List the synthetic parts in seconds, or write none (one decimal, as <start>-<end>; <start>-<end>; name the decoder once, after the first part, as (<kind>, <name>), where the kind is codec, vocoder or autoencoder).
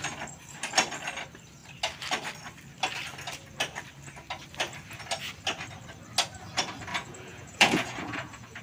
6.9-8.6 (vocoder, Vocos)